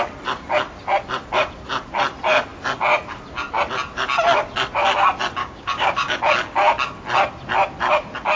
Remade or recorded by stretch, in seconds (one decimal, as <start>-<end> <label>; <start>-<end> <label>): 0.0-5.4 recorded; 5.4-6.2 remade; 6.2-8.4 recorded